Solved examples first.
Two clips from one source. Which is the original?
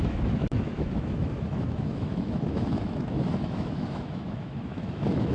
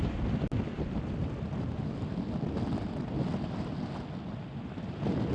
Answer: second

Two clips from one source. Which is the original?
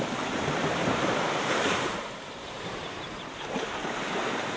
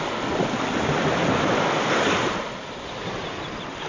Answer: second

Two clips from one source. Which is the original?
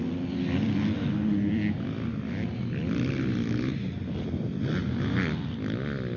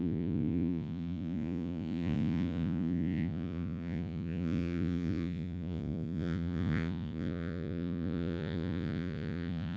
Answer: first